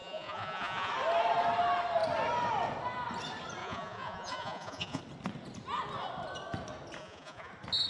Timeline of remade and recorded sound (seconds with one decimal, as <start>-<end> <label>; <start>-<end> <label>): 0.0-0.9 remade; 0.9-3.6 recorded; 3.6-5.0 remade; 5.0-7.0 recorded; 7.0-7.5 remade; 7.5-7.9 recorded